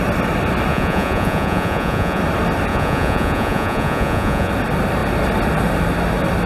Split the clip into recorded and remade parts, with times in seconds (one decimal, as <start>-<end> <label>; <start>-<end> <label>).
0.0-0.7 recorded; 0.7-2.2 remade; 2.2-2.7 recorded; 2.7-4.5 remade; 4.5-6.5 recorded